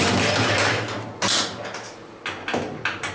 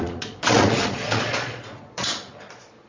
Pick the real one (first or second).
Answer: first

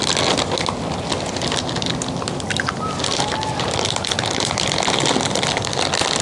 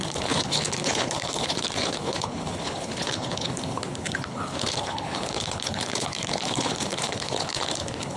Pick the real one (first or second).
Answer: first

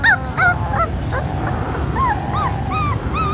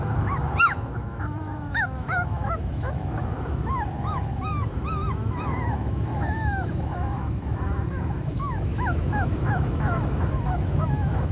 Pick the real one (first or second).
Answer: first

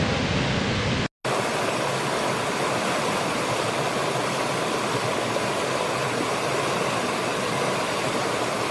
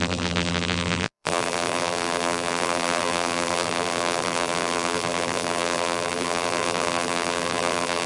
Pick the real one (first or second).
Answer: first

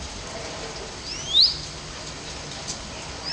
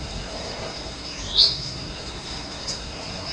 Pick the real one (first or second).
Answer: first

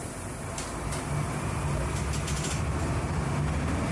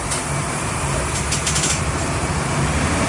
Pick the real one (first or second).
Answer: first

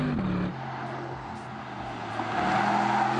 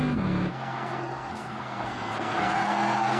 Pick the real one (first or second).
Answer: first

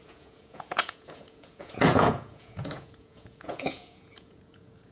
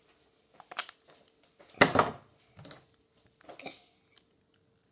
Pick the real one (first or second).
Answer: second